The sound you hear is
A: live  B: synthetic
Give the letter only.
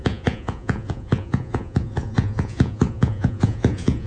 B